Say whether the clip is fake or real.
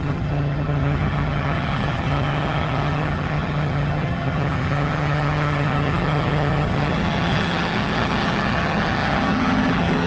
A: fake